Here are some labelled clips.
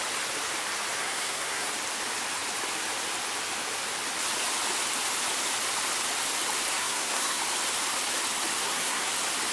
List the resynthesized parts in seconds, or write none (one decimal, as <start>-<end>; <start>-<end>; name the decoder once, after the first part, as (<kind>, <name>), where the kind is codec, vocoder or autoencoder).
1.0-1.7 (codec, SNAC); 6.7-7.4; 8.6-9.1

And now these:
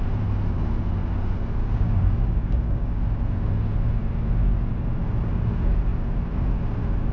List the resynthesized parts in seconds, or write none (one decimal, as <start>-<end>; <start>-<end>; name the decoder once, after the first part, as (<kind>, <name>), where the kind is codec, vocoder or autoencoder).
1.6-3.0 (codec, DAC)

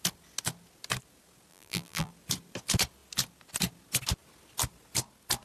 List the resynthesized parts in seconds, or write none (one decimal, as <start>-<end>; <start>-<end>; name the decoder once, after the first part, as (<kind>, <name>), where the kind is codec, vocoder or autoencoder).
1.5-2.1 (vocoder, BigVGAN v2)